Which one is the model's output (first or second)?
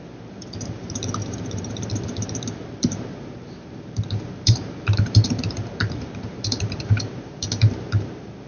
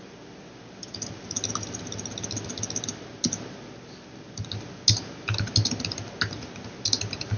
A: first